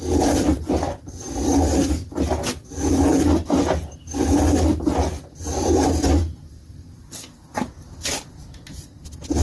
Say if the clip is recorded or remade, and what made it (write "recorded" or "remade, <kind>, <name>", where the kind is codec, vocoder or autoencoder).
recorded